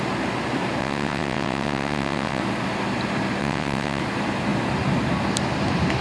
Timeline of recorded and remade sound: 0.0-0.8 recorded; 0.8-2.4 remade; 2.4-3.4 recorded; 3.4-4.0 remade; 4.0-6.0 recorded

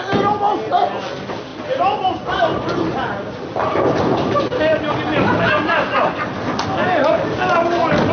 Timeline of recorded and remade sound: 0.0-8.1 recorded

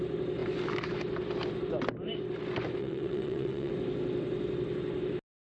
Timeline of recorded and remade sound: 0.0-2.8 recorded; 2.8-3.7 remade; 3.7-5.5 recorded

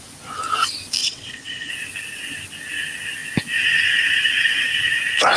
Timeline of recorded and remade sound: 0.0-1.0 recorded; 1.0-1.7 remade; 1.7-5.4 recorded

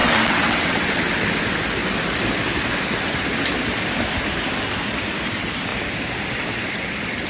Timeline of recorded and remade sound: 0.0-0.9 remade; 0.9-7.3 recorded

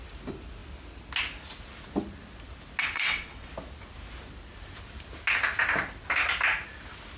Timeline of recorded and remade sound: 0.0-2.8 recorded; 2.8-3.5 remade; 3.5-7.2 recorded

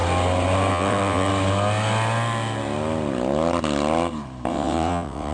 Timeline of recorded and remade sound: 0.0-0.7 recorded; 0.7-1.3 remade; 1.3-4.5 recorded; 4.5-5.3 remade